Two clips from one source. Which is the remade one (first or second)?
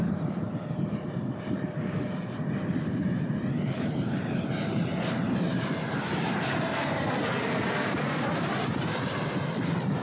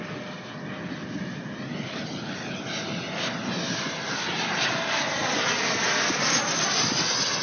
first